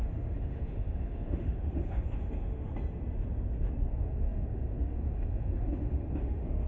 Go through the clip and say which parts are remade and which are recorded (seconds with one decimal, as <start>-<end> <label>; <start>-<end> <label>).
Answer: 0.0-2.7 remade; 2.7-3.9 recorded; 3.9-6.7 remade